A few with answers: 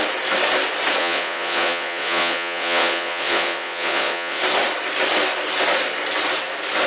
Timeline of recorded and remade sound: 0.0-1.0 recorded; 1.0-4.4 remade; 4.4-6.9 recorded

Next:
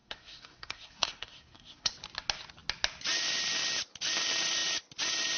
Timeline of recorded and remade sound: 0.0-1.9 remade; 1.9-5.4 recorded

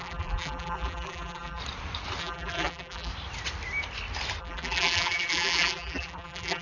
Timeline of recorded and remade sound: 0.0-1.6 remade; 1.6-2.2 recorded; 2.2-3.1 remade; 3.1-4.4 recorded; 4.4-6.6 remade

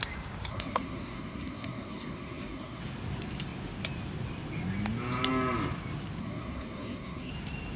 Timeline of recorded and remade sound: 0.0-0.5 recorded; 0.5-2.8 remade; 2.8-6.2 recorded; 6.2-7.3 remade; 7.3-7.8 recorded

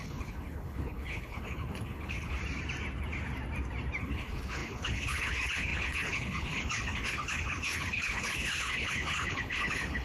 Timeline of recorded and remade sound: 0.0-2.4 remade; 2.4-4.0 recorded; 4.0-10.0 remade

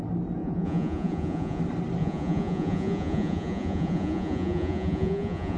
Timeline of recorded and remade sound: 0.0-0.4 recorded; 0.4-1.6 remade; 1.6-2.0 recorded; 2.0-5.6 remade

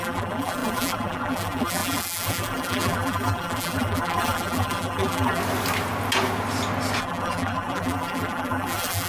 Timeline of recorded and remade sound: 0.0-5.4 remade; 5.4-7.0 recorded; 7.0-9.1 remade

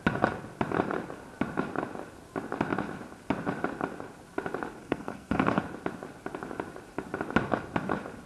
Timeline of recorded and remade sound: 0.0-4.8 recorded; 4.8-5.6 remade; 5.6-8.3 recorded